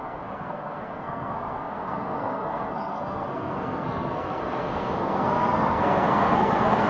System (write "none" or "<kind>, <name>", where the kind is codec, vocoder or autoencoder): codec, SNAC